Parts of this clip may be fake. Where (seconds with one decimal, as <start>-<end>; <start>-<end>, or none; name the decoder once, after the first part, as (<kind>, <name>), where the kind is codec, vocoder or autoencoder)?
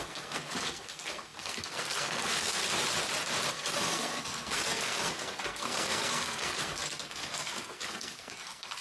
0.0-2.6 (codec, SNAC); 3.5-8.8